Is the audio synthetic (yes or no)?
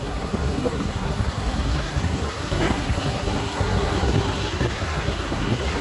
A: yes